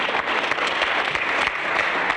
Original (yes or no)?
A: yes